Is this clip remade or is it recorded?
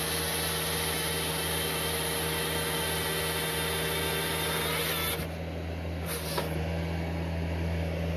recorded